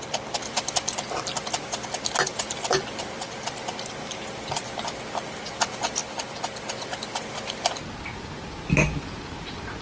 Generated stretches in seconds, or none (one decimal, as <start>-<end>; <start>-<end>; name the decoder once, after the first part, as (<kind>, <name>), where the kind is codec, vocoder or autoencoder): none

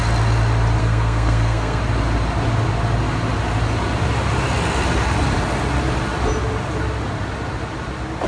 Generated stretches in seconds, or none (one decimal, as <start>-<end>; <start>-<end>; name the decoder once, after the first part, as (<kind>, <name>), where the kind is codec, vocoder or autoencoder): 0.8-1.8 (codec, SNAC)

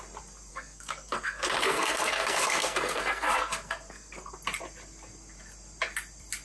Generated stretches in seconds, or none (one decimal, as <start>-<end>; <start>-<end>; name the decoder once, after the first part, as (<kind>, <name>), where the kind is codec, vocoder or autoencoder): 0.5-4.3 (codec, SNAC)

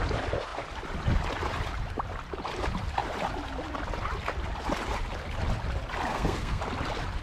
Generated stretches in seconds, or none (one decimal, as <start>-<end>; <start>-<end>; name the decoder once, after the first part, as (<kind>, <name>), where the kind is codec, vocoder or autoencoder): 6.1-6.6 (codec, SNAC)